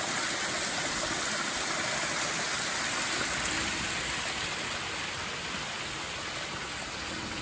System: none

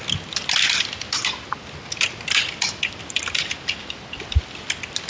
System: none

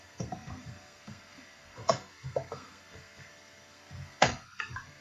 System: codec, SNAC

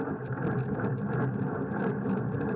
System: none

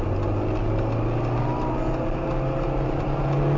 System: none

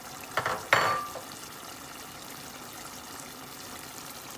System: none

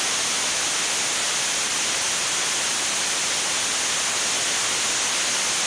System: none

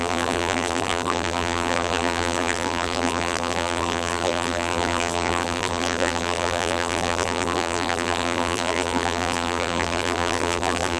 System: vocoder, BigVGAN v2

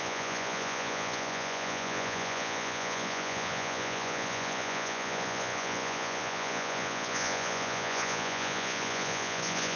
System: vocoder, Vocos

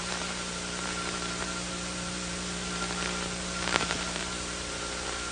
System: vocoder, BigVGAN v2